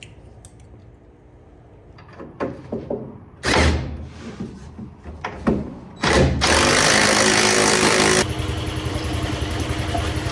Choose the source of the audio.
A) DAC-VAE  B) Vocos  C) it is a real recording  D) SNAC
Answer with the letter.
C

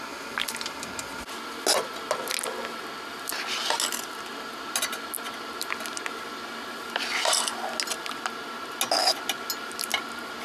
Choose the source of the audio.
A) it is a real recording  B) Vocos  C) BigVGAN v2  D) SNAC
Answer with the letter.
A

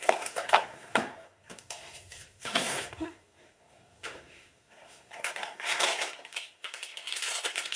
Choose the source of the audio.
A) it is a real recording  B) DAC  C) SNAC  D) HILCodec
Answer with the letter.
C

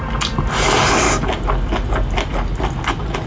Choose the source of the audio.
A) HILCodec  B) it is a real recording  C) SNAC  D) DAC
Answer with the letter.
B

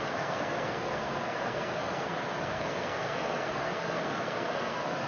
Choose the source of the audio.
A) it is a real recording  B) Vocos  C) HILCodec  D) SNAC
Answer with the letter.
D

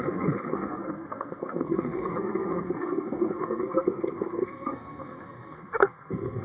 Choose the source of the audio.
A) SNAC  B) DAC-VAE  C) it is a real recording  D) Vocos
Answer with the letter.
A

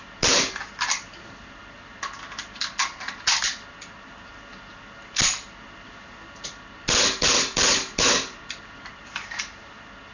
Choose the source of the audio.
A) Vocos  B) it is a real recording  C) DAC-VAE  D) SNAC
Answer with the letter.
B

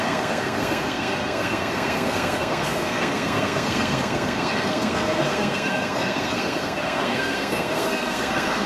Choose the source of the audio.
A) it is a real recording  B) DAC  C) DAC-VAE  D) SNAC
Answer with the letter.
D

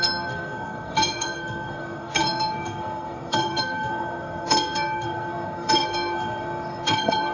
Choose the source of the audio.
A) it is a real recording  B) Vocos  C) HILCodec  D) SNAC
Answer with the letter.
D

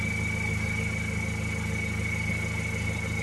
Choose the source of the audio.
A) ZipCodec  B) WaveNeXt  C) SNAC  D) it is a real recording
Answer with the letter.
D